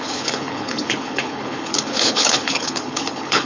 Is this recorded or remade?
remade